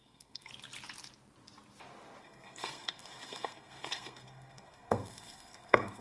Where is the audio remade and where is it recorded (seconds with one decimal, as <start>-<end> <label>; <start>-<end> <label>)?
0.0-0.5 remade; 0.5-2.2 recorded; 2.2-6.0 remade